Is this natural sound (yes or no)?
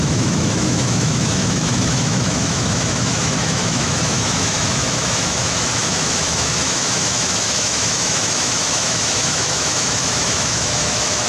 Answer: no